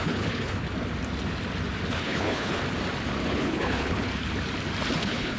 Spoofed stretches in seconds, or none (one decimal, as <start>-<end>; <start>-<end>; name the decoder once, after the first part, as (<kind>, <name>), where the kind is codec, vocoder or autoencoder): 0.0-0.7 (codec, HILCodec); 1.9-2.6; 3.2-4.1; 5.0-5.4